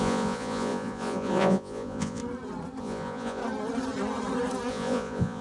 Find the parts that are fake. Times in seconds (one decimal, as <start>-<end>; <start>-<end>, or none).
0.0-2.2; 2.8-3.4; 4.7-5.4